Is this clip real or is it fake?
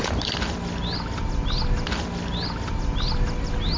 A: real